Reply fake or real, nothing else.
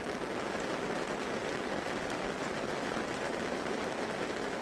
real